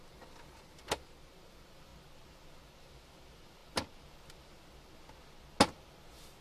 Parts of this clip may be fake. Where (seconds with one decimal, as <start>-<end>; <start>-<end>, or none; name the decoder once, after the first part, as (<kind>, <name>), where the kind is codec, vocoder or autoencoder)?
none